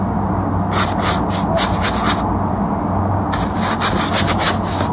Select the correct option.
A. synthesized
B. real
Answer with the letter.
B